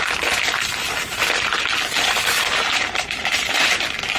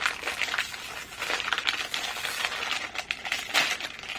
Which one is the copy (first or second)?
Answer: first